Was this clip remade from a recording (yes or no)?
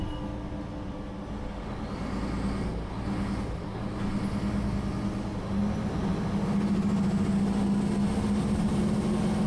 no